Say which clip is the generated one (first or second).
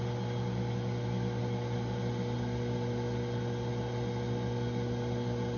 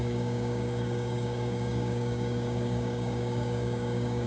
second